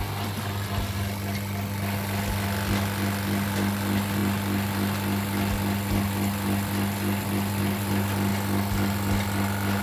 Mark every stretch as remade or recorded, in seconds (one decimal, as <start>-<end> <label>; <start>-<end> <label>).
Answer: 0.0-9.8 recorded